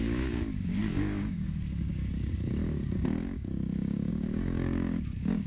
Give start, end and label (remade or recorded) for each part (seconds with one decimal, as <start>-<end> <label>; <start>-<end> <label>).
0.0-5.5 remade